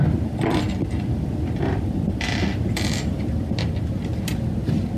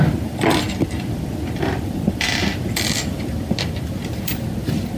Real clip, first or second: first